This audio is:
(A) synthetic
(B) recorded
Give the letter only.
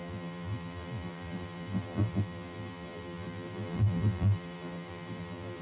A